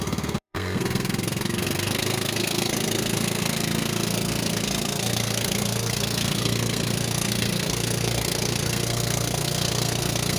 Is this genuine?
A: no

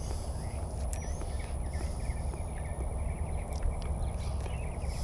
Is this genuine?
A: yes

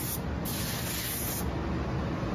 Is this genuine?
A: yes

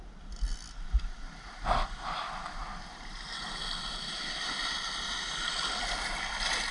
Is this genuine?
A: yes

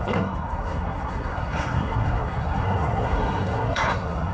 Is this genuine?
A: no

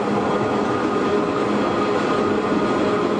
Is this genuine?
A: yes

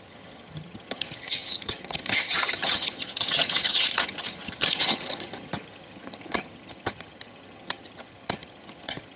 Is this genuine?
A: no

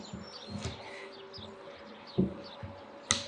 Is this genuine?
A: yes